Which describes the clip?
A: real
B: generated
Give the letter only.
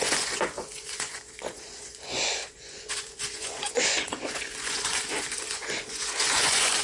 B